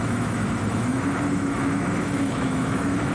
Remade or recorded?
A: remade